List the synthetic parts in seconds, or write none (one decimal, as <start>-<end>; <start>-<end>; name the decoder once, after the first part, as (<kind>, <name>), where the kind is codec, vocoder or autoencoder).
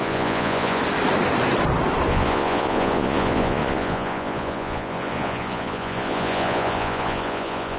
0.0-0.8 (vocoder, Vocos); 2.1-7.8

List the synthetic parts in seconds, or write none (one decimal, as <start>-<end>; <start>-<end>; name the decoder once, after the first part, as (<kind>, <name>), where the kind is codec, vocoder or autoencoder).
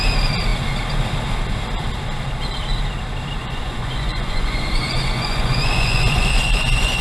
3.4-7.0 (vocoder, Vocos)